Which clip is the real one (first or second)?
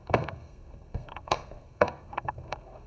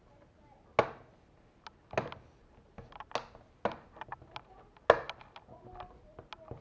second